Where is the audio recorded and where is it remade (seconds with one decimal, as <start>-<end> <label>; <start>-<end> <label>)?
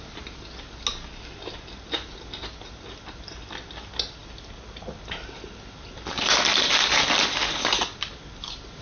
0.0-8.8 recorded